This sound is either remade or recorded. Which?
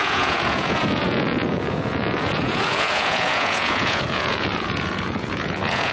remade